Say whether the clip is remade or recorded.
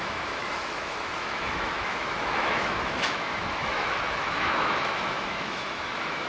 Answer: remade